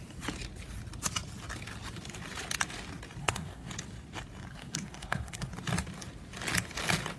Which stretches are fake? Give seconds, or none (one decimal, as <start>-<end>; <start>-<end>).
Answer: 3.2-3.7; 4.5-5.5